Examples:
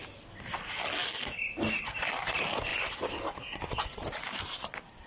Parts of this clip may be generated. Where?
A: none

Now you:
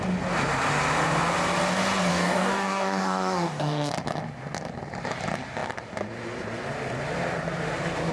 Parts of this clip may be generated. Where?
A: 2.1-3.9 (codec, DAC)

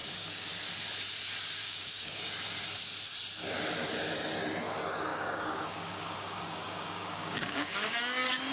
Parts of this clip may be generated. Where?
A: 0.0-0.5 (codec, DAC); 1.6-2.3; 5.1-8.0

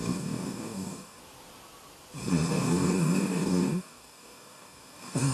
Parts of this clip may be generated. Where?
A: 0.0-1.2 (codec, DAC); 2.5-5.3

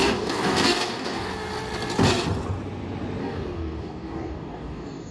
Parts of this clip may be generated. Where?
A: 0.0-1.3 (codec, DAC); 3.2-5.1

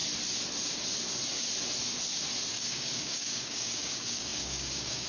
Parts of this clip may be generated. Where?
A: 2.5-5.1 (codec, DAC)

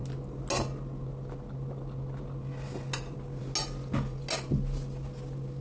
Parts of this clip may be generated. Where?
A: none

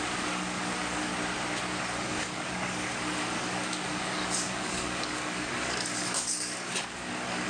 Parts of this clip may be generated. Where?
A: 0.0-1.1 (codec, DAC); 1.8-7.5